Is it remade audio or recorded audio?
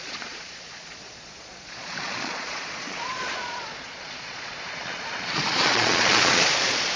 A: remade